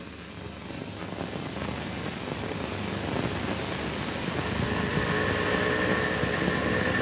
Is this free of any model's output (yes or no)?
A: yes